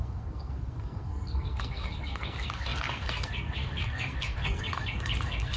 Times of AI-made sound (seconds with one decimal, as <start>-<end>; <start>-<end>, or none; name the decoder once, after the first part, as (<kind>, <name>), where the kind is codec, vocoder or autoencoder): 0.0-5.6 (codec, SNAC)